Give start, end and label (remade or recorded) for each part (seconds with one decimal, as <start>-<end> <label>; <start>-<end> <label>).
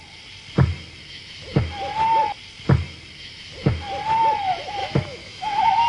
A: 0.0-4.8 recorded; 4.8-5.9 remade